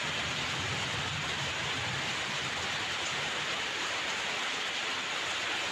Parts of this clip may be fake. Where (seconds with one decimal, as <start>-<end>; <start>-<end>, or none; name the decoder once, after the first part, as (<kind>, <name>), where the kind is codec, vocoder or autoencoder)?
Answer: 1.1-4.5 (vocoder, BigVGAN v2)